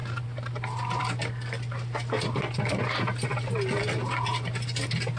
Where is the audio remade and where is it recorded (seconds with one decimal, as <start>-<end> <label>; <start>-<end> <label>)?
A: 0.0-5.2 recorded